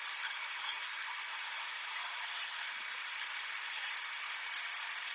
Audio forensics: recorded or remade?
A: remade